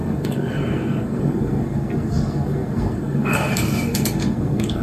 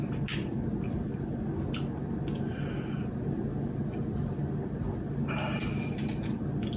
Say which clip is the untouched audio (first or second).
second